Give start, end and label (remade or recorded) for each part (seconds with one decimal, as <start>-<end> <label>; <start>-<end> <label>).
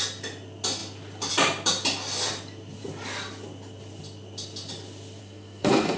0.0-5.2 recorded; 5.2-6.0 remade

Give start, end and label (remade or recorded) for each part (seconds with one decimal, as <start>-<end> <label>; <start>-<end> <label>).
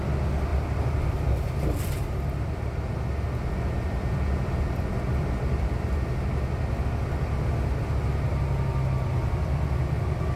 0.0-0.5 recorded; 0.5-2.8 remade; 2.8-10.4 recorded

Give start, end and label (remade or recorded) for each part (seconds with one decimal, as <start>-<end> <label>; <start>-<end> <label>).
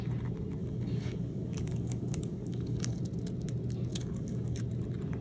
0.0-0.6 recorded; 0.6-3.0 remade; 3.0-3.9 recorded; 3.9-4.6 remade; 4.6-5.2 recorded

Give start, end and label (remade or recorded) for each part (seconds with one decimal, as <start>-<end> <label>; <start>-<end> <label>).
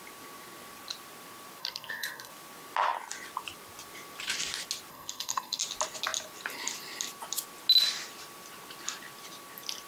0.0-1.6 recorded; 1.6-2.3 remade; 2.3-4.9 recorded; 4.9-5.6 remade; 5.6-9.9 recorded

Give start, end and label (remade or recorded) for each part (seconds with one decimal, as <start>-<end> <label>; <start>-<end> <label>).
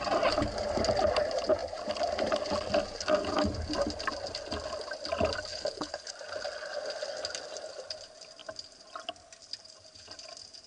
0.0-5.5 recorded; 5.5-6.1 remade; 6.1-10.7 recorded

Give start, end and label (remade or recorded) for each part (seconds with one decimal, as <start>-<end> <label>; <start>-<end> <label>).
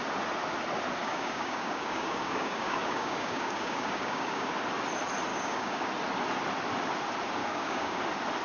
0.0-1.0 recorded; 1.0-4.5 remade; 4.5-5.3 recorded; 5.3-5.8 remade; 5.8-7.4 recorded; 7.4-8.0 remade; 8.0-8.4 recorded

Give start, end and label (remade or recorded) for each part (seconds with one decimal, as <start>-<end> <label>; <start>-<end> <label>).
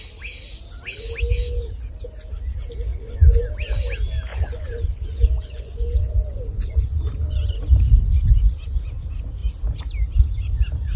0.0-2.9 recorded; 2.9-3.4 remade; 3.4-4.3 recorded; 4.3-7.6 remade; 7.6-11.0 recorded